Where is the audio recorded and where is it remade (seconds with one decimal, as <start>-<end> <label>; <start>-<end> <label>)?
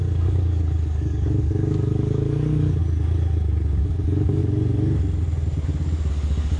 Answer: 0.0-2.8 remade; 2.8-3.8 recorded; 3.8-4.4 remade; 4.4-6.1 recorded; 6.1-6.6 remade